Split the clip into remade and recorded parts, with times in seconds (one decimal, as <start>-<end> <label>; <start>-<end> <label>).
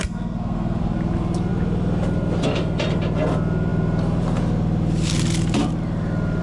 0.0-0.8 remade; 0.8-6.4 recorded